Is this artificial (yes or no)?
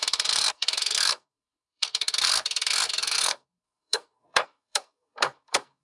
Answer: yes